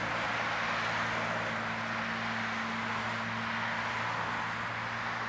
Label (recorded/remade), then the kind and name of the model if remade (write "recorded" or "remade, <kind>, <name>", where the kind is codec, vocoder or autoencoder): recorded